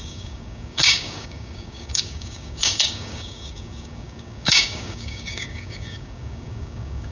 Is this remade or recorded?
remade